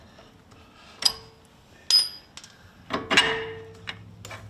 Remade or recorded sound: recorded